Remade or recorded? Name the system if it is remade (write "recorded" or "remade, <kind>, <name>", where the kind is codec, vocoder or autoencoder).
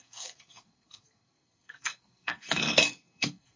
remade, codec, SNAC